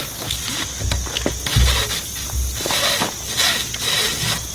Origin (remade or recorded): recorded